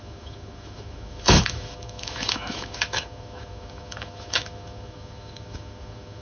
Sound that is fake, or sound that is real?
fake